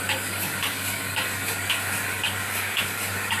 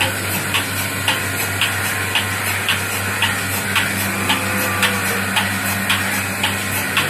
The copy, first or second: first